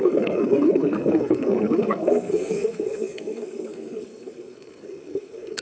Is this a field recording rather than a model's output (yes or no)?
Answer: no